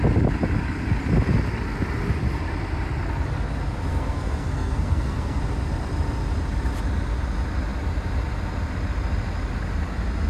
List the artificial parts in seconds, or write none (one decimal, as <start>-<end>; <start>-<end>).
3.9-5.4